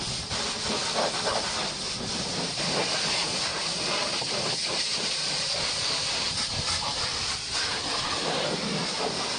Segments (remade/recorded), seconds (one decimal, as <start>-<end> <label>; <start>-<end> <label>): 0.0-3.5 recorded; 3.5-7.4 remade; 7.4-9.4 recorded